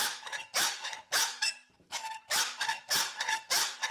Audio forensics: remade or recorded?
remade